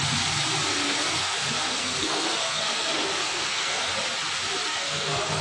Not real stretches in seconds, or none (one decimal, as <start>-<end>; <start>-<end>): 0.7-3.9; 4.7-5.4

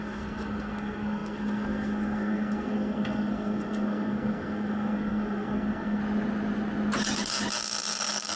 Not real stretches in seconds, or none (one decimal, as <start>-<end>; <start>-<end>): 0.0-6.0; 8.0-8.4

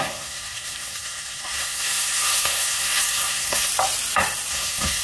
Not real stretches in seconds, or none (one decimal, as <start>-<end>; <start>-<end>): 0.0-3.7; 4.5-5.0

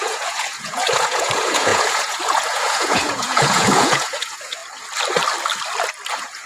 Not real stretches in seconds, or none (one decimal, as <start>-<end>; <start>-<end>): 0.0-4.6; 6.1-6.5

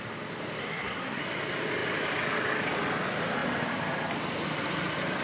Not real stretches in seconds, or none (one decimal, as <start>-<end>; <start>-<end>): 0.6-1.2

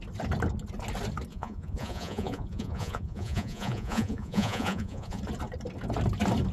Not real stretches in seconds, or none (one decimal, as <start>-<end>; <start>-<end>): 1.3-5.2

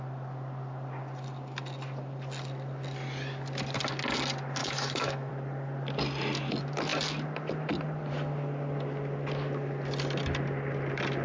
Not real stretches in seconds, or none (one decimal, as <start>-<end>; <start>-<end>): 4.6-5.3

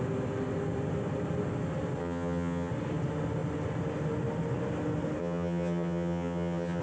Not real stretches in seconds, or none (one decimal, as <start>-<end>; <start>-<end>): 2.0-2.7; 5.2-6.8